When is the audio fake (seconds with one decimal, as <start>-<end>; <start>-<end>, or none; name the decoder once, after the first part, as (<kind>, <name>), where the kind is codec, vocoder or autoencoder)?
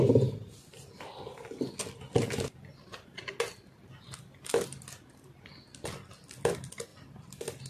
none